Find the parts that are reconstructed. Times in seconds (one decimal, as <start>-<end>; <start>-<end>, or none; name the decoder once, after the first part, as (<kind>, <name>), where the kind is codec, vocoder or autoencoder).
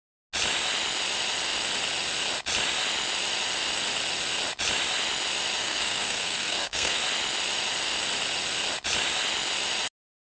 5.6-7.0 (codec, SNAC)